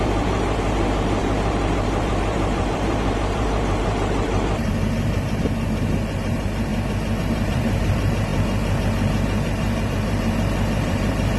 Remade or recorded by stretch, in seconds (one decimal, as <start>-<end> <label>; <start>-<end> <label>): 0.0-6.7 remade; 6.7-7.2 recorded; 7.2-11.4 remade